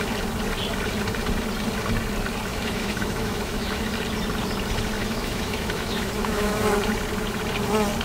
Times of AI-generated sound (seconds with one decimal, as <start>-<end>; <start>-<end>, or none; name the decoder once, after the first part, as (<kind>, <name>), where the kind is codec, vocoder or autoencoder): 2.5-3.9 (autoencoder, DAC-VAE); 5.0-6.6